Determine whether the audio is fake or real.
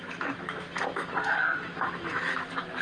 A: fake